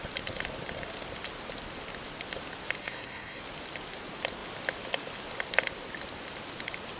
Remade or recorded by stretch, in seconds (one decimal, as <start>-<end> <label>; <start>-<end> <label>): 0.0-2.8 recorded; 2.8-3.4 remade; 3.4-7.0 recorded